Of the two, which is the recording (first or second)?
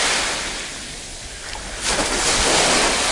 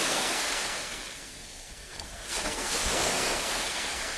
first